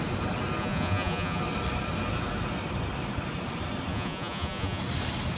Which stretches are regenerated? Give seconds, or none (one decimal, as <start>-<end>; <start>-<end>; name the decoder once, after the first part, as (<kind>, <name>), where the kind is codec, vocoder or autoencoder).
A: 0.6-1.4 (vocoder, Vocos); 3.9-4.8